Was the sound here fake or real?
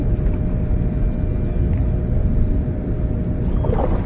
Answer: real